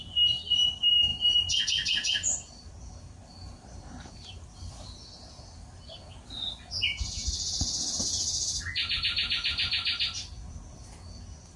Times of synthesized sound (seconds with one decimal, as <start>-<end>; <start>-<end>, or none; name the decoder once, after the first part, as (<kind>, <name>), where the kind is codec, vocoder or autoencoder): none